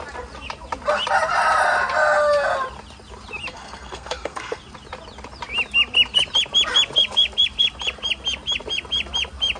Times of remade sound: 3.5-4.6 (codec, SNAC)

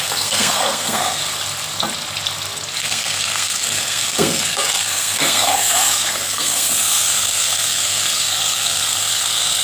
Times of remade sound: 0.0-1.2 (codec, SNAC); 2.8-9.6